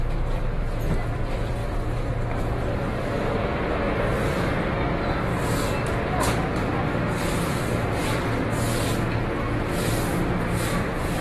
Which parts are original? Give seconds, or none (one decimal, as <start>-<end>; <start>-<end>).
0.0-1.6; 3.0-11.2